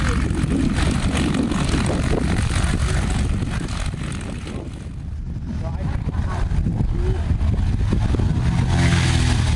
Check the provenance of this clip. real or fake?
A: real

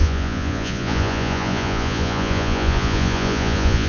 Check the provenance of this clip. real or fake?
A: fake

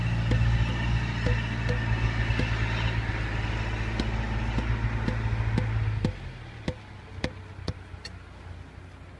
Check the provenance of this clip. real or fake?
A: real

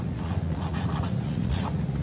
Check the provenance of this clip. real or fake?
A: fake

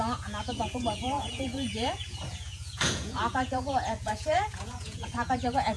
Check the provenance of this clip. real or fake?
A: fake